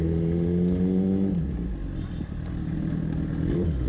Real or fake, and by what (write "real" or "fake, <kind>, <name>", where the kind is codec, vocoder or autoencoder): real